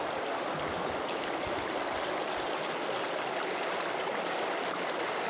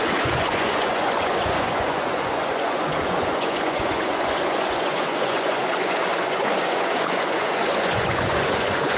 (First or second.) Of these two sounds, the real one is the first